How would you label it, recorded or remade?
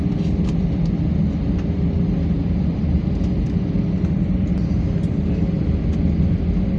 recorded